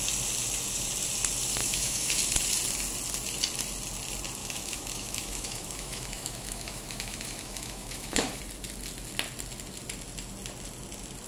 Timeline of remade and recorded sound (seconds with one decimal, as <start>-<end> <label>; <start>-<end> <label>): 0.0-1.6 recorded; 1.6-2.2 remade; 2.2-4.4 recorded; 4.4-8.4 remade; 8.4-11.3 recorded